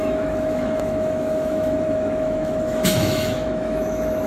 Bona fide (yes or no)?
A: no